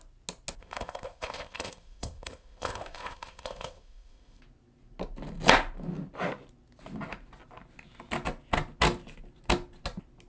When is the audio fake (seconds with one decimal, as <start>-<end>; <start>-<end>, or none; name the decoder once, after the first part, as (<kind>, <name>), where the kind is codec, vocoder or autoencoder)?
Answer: 0.6-4.4 (codec, ZipCodec)

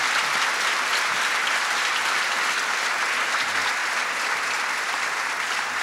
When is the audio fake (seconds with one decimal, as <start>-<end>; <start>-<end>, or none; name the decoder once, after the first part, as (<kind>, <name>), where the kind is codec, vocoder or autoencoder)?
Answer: 1.1-2.2 (vocoder, BigVGAN v2); 3.8-4.9

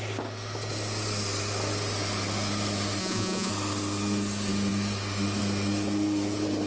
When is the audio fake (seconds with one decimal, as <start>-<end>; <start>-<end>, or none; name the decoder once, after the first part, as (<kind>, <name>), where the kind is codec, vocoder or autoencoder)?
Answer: 3.0-3.5 (vocoder, Vocos)

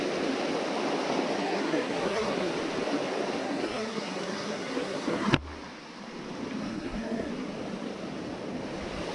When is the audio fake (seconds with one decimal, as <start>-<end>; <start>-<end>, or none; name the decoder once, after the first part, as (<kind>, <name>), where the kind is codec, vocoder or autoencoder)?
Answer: 1.4-2.5 (codec, SNAC); 3.4-5.4; 6.6-7.3

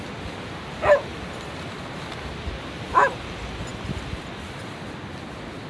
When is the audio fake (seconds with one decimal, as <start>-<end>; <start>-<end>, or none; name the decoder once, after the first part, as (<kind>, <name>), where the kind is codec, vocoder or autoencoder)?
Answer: 1.1-3.0 (vocoder, BigVGAN v2)

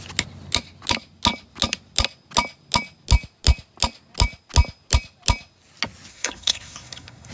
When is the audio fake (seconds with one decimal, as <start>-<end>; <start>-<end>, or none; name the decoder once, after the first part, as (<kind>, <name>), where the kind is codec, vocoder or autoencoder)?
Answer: 6.1-7.3 (codec, SNAC)

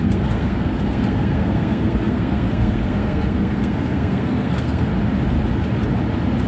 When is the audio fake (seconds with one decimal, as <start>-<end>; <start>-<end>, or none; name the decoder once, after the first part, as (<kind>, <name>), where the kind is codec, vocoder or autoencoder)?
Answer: 0.0-4.9 (codec, SNAC)

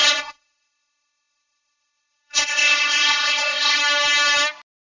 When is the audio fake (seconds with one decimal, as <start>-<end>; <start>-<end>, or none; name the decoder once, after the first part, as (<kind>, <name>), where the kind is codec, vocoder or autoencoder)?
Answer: 0.0-3.8 (codec, ZipCodec)